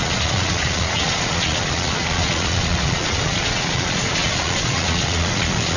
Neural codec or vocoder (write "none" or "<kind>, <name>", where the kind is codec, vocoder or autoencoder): vocoder, Vocos